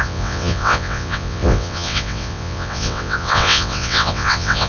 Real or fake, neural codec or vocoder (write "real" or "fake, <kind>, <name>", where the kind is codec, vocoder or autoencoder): fake, vocoder, WaveNeXt